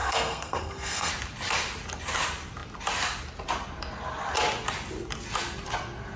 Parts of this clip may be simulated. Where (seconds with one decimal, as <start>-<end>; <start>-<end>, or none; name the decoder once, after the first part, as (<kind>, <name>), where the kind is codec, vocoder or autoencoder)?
0.0-1.1 (codec, SNAC)